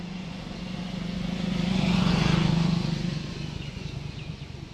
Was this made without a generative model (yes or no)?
no